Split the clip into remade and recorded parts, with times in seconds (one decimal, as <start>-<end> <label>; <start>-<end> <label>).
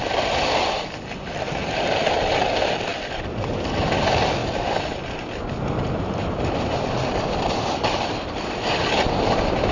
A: 0.0-9.7 recorded